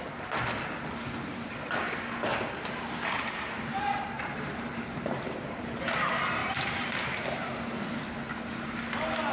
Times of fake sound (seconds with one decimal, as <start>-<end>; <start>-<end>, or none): 2.3-5.8; 6.4-7.6